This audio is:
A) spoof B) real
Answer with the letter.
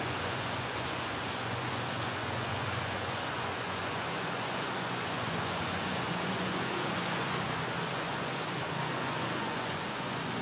A